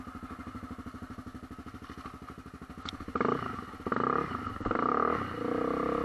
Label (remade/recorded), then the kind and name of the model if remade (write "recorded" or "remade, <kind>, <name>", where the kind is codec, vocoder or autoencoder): recorded